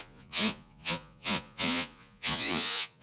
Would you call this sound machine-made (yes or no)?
yes